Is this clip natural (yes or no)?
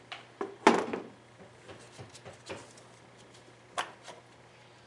yes